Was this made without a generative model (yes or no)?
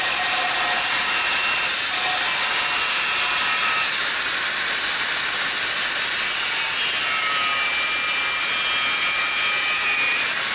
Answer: yes